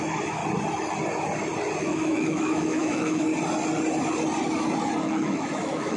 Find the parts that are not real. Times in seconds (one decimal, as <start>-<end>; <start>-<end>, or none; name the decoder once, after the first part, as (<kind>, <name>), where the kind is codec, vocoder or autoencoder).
0.0-0.4 (autoencoder, DAC-VAE); 1.8-3.3; 5.0-6.0